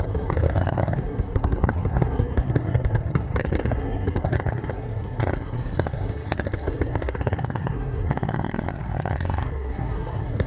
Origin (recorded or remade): remade